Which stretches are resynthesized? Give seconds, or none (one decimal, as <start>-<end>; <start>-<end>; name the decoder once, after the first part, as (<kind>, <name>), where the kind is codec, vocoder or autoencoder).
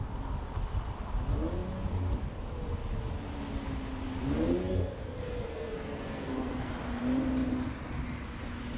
4.6-6.7 (codec, SNAC)